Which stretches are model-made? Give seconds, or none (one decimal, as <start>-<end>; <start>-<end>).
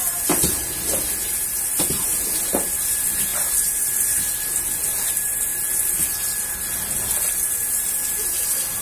0.0-3.3; 5.1-5.5; 7.5-8.8